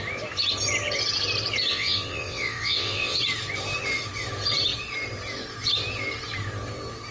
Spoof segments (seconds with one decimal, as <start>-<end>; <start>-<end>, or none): 1.7-3.2